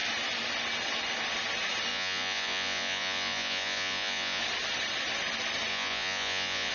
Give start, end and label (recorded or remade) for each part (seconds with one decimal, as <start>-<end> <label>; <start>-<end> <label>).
0.0-1.9 recorded; 1.9-4.4 remade; 4.4-5.7 recorded; 5.7-6.7 remade